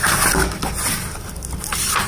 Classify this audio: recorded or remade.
recorded